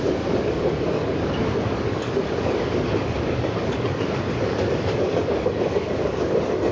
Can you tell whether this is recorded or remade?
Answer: remade